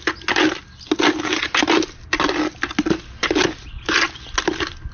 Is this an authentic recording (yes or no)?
yes